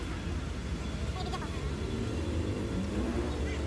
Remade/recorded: recorded